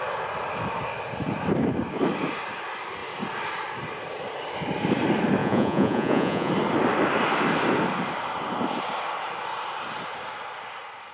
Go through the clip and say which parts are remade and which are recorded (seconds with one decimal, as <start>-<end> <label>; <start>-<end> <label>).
0.0-5.4 recorded; 5.4-6.5 remade; 6.5-11.1 recorded